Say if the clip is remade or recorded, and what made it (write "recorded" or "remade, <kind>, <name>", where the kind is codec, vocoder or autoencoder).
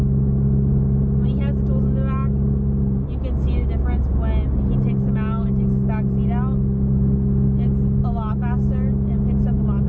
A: recorded